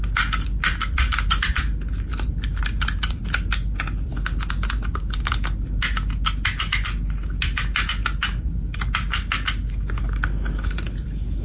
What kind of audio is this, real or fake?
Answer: real